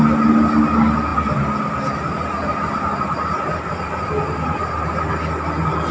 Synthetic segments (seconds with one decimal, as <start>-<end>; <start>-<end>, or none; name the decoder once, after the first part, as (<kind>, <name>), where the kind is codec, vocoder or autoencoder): none